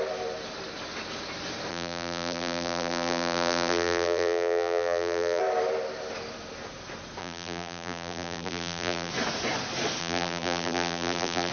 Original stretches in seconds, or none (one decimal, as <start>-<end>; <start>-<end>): 0.0-1.7; 5.4-7.2; 9.1-10.0